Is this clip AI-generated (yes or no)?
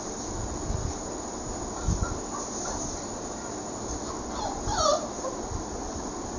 no